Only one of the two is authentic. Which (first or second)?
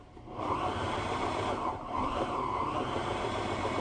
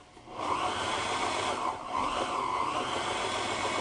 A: second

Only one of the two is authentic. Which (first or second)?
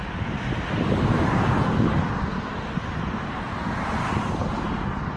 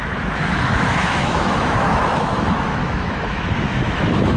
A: first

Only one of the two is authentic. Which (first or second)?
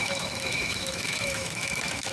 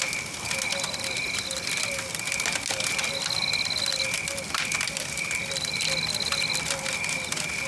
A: second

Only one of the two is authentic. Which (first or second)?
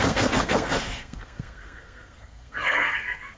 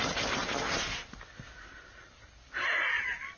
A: second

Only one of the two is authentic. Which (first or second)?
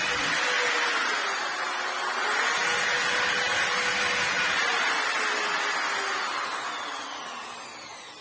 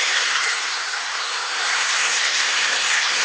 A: first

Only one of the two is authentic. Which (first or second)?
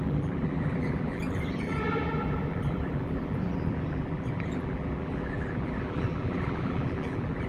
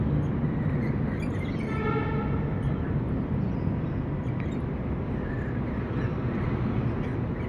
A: second